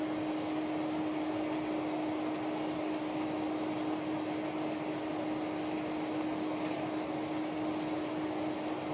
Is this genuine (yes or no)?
yes